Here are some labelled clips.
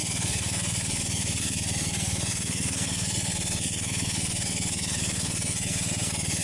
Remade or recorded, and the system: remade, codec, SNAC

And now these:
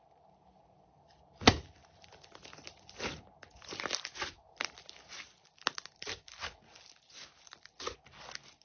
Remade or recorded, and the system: recorded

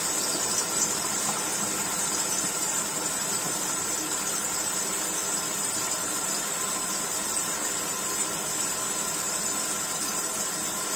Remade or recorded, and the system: remade, vocoder, BigVGAN v2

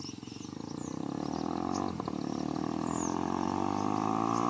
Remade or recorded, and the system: recorded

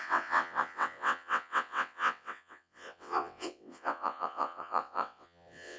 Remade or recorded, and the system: remade, vocoder, WaveNeXt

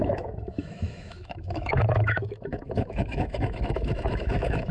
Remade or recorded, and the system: remade, autoencoder, DAC-VAE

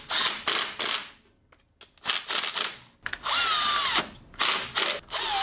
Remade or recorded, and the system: recorded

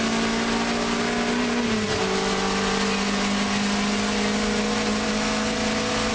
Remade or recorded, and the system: recorded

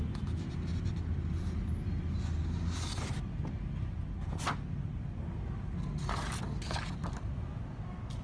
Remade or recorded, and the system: recorded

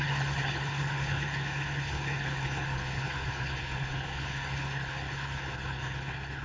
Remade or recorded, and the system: remade, codec, HILCodec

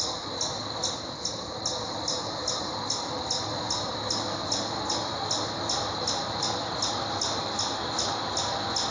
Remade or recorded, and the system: recorded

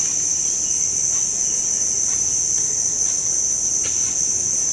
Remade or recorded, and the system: recorded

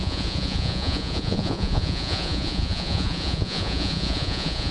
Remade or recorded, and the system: remade, vocoder, Vocos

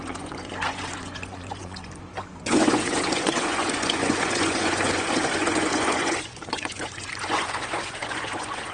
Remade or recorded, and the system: remade, vocoder, Vocos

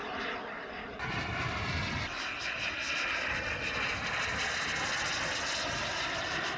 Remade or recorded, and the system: recorded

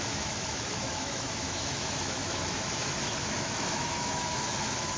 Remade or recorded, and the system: remade, autoencoder, DAC-VAE